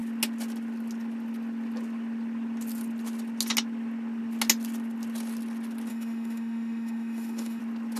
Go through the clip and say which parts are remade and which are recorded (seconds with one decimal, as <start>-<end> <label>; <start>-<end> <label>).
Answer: 0.0-5.9 recorded; 5.9-7.6 remade; 7.6-8.0 recorded